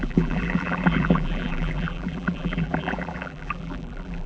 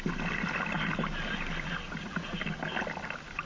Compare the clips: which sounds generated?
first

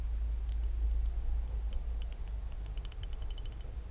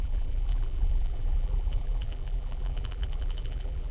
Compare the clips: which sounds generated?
second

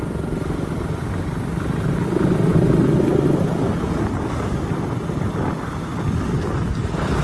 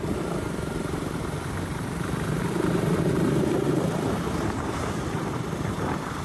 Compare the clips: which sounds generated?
second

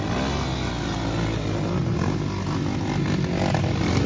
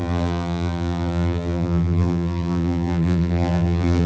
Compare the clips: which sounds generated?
second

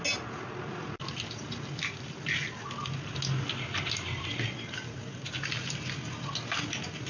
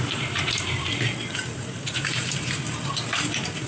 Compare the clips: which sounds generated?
second